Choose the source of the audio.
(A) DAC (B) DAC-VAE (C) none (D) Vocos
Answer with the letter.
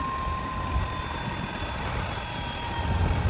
C